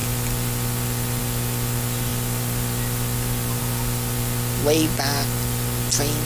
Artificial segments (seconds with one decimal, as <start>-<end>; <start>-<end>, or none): none